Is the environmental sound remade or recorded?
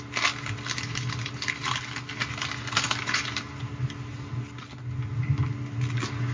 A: recorded